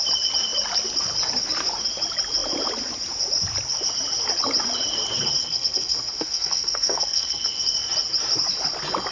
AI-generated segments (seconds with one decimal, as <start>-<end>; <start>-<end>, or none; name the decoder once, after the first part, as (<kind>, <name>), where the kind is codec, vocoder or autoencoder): 5.4-7.6 (codec, SNAC)